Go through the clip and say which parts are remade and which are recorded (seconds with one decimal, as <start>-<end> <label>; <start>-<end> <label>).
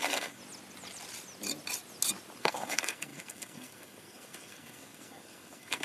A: 0.0-0.4 remade; 0.4-2.4 recorded; 2.4-5.8 remade